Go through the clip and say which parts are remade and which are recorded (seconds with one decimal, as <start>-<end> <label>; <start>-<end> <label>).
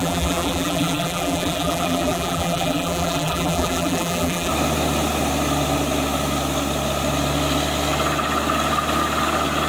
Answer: 0.0-4.5 remade; 4.5-9.7 recorded